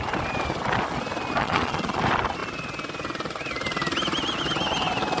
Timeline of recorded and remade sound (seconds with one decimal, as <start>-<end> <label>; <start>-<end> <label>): 0.0-1.4 recorded; 1.4-2.0 remade; 2.0-5.2 recorded